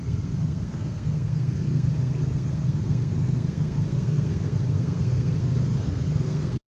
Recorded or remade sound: remade